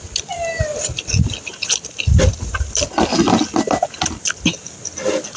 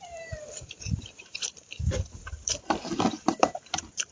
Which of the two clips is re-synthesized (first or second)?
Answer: second